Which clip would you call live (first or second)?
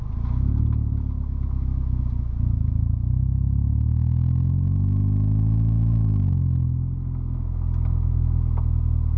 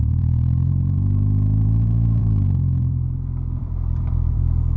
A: first